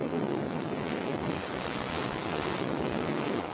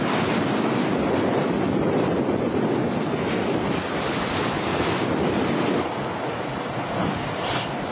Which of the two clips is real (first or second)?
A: second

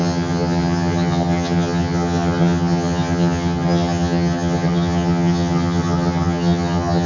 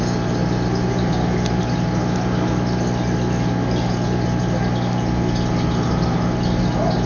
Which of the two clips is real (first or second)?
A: second